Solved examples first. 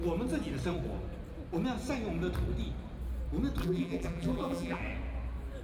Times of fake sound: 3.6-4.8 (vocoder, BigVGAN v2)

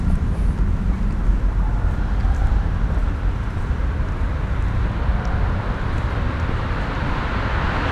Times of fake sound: 3.0-4.2 (vocoder, BigVGAN v2); 5.1-6.1

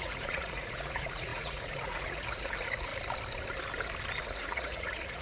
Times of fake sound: 0.0-2.9 (vocoder, Vocos); 4.2-5.2